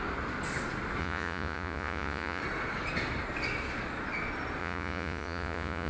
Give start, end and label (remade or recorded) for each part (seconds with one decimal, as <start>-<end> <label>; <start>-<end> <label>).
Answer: 0.0-1.0 recorded; 1.0-2.4 remade; 2.4-4.6 recorded; 4.6-5.9 remade